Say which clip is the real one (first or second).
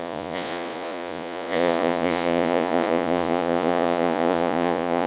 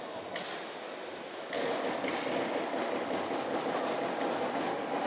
second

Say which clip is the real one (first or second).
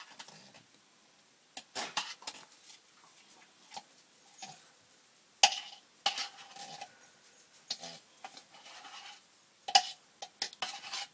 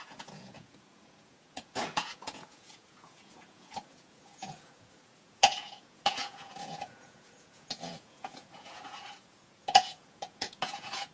first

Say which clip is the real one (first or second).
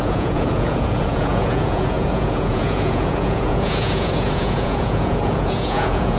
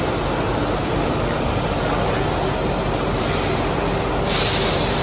second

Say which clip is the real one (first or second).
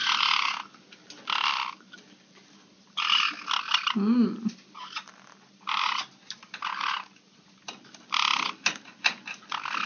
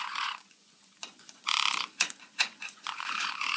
first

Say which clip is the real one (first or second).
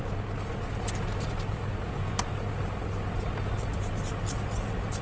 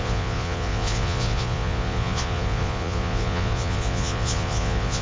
first